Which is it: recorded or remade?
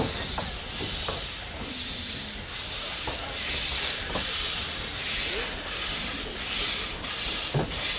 recorded